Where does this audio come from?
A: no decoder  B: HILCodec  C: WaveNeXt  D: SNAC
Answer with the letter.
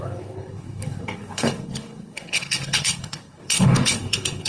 B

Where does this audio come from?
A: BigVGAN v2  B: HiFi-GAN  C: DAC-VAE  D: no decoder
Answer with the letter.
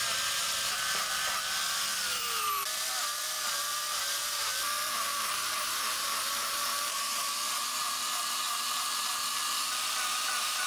A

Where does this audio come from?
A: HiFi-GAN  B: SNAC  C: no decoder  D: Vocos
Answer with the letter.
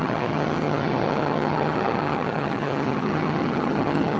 A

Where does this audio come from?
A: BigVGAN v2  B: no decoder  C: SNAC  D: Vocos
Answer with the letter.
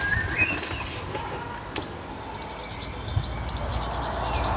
B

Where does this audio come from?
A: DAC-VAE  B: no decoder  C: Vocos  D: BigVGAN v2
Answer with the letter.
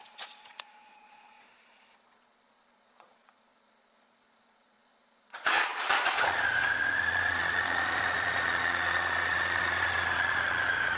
C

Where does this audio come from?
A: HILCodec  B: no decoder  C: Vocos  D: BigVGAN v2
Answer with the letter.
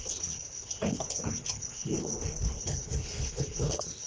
A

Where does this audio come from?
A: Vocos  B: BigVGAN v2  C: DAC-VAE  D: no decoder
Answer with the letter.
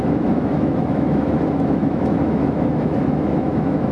C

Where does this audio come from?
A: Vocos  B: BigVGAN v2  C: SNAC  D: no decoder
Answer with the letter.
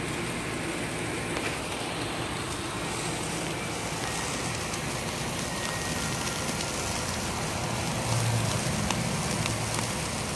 D